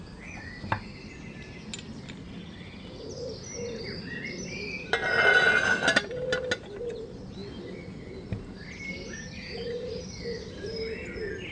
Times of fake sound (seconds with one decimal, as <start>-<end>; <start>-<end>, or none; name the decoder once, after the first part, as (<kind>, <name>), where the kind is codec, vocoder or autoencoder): none